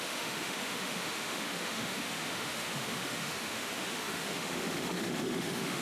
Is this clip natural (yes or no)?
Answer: no